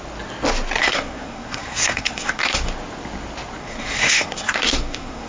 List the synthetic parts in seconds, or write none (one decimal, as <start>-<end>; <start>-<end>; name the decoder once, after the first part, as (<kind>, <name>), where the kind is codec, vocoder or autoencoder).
0.8-2.7 (codec, SNAC); 3.6-5.3